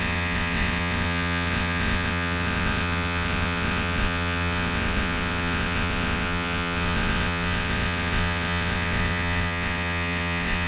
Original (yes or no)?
no